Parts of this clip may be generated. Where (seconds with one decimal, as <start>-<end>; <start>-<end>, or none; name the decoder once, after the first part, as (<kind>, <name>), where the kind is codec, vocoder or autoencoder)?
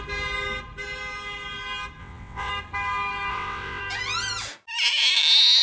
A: 2.0-2.5 (vocoder, WaveNeXt); 3.3-3.8